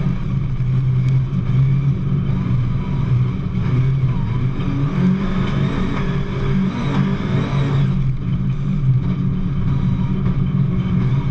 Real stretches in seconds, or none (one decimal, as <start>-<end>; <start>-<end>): 0.0-8.3; 8.9-11.3